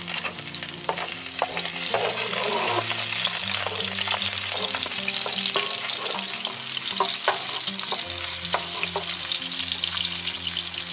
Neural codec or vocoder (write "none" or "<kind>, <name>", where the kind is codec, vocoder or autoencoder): none